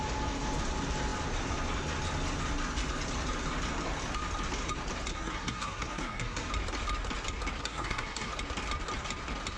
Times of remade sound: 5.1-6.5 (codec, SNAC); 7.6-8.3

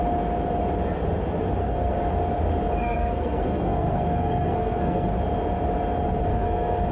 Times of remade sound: 1.6-2.1 (codec, SNAC); 2.8-5.1; 6.3-6.9

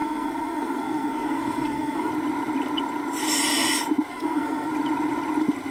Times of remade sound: 0.0-2.1 (codec, SNAC); 4.1-4.7

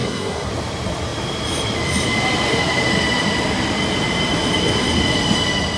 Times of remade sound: 0.0-0.5 (codec, SNAC)

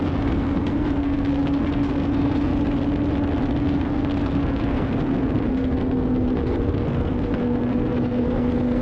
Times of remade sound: 0.0-2.5 (codec, SNAC); 3.6-8.8